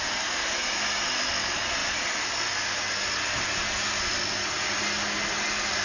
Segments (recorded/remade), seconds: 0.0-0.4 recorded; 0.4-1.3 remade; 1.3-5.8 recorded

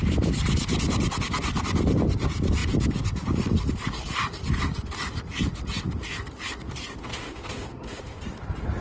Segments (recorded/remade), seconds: 0.0-7.0 recorded; 7.0-8.2 remade; 8.2-8.8 recorded

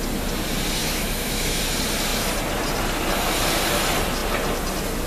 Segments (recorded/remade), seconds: 0.0-0.8 recorded; 0.8-1.6 remade; 1.6-5.1 recorded

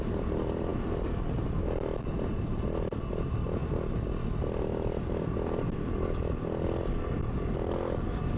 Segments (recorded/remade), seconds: 0.0-8.4 recorded

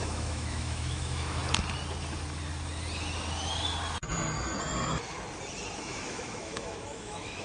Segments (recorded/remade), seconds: 0.0-1.4 remade; 1.4-5.8 recorded; 5.8-7.4 remade